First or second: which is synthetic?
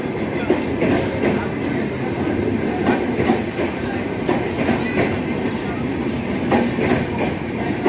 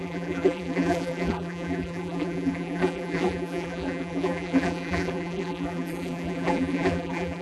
second